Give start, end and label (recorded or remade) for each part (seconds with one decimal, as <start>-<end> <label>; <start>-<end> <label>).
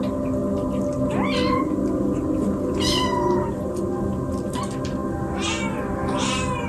0.0-6.7 recorded